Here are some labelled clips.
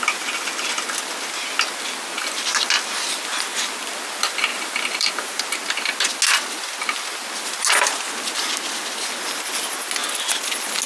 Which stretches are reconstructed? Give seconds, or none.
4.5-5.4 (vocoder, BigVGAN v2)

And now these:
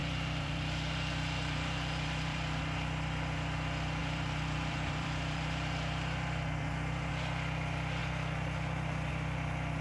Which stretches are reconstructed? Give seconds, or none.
0.0-2.6 (vocoder, BigVGAN v2); 4.0-7.1

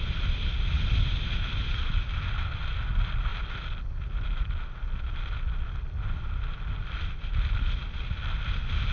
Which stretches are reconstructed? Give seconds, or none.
none

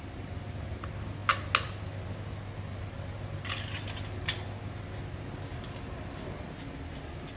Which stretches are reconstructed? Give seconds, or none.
none

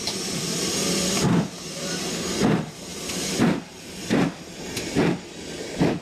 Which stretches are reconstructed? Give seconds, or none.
0.0-1.9 (vocoder, BigVGAN v2); 2.9-4.6

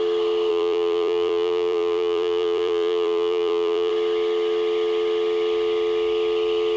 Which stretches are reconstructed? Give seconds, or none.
0.5-3.9 (vocoder, BigVGAN v2)

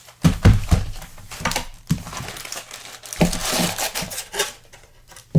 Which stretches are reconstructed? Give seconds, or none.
0.0-3.4 (vocoder, BigVGAN v2); 4.0-5.4